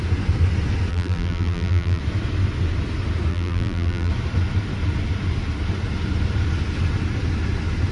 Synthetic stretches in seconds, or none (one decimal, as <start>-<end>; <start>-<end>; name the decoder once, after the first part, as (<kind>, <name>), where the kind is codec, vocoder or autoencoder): 0.9-2.0 (vocoder, BigVGAN v2); 3.3-4.1